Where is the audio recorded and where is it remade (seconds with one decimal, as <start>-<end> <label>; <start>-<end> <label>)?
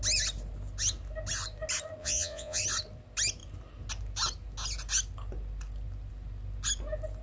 0.0-2.0 recorded; 2.0-2.6 remade; 2.6-7.2 recorded